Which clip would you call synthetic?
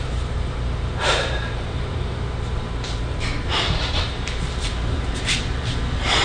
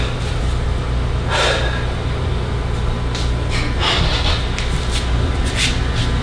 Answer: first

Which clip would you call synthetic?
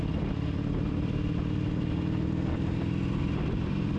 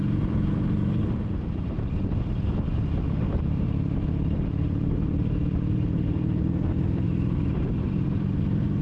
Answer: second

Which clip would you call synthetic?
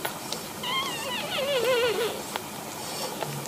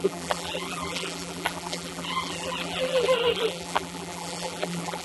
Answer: second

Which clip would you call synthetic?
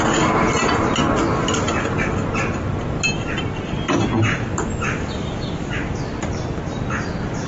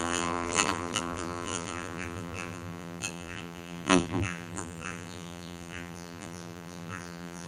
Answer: second